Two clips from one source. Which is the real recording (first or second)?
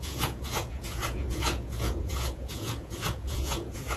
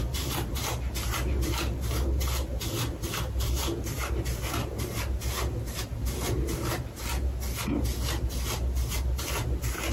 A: second